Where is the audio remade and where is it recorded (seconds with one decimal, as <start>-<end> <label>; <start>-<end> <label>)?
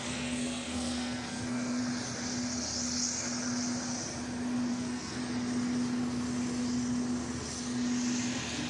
0.0-1.8 remade; 1.8-4.7 recorded; 4.7-5.2 remade; 5.2-8.7 recorded